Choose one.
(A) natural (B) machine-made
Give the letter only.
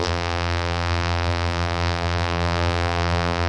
B